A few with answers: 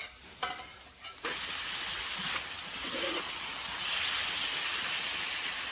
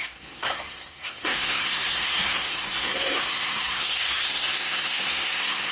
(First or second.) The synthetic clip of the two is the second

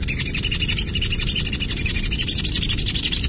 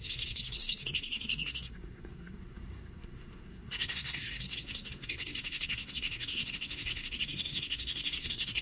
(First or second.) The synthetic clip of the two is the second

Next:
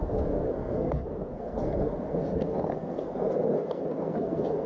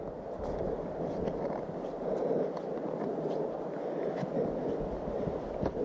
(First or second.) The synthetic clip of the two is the first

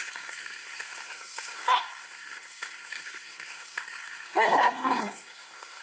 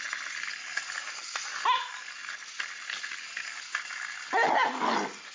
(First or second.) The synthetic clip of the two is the first